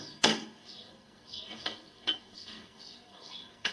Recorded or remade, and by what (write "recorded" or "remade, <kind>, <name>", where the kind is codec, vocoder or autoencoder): remade, codec, SNAC